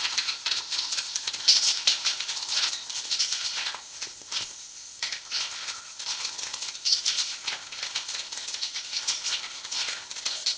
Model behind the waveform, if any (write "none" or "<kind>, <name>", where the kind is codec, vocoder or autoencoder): codec, ZipCodec